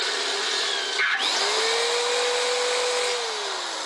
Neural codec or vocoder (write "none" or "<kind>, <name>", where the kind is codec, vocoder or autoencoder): none